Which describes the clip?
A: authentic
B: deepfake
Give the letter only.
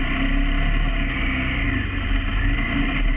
A